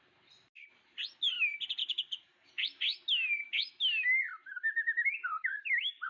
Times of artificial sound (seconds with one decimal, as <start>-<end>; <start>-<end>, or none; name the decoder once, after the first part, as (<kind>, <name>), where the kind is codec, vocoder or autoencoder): 1.8-2.5 (codec, DAC); 5.2-6.1